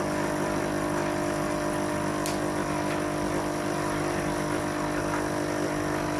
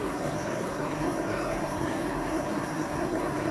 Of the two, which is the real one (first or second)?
first